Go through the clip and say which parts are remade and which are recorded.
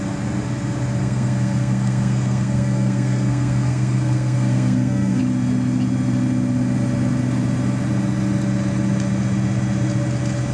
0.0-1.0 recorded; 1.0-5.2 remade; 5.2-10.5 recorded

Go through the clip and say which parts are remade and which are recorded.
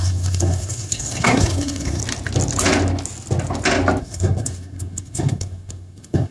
0.0-2.0 remade; 2.0-4.0 recorded; 4.0-6.3 remade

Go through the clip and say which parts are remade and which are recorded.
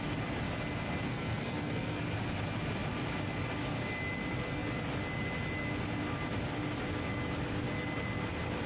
0.0-1.1 recorded; 1.1-2.0 remade; 2.0-8.7 recorded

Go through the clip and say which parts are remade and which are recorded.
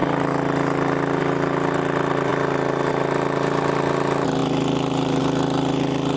0.0-6.2 recorded